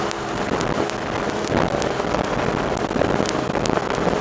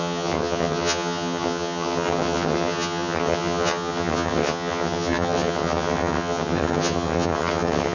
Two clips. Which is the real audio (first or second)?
first